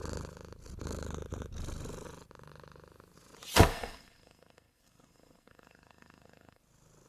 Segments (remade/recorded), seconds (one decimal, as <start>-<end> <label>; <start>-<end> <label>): 0.0-3.7 recorded; 3.7-6.6 remade; 6.6-7.1 recorded